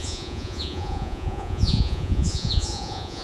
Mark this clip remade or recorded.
remade